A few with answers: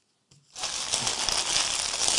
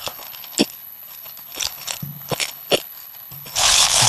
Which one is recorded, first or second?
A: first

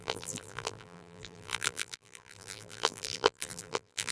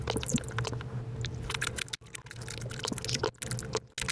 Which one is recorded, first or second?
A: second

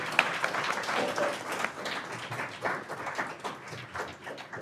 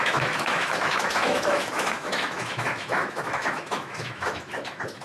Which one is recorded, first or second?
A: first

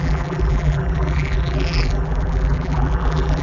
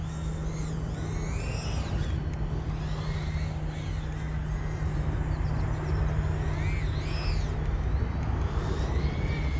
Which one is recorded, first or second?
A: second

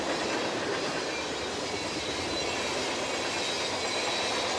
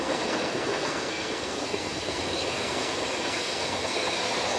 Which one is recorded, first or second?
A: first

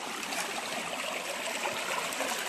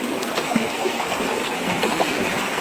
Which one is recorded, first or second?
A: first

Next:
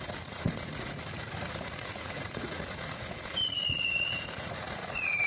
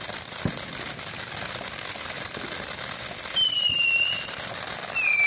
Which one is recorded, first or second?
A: second